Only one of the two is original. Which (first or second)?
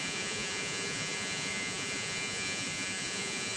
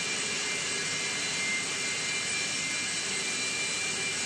second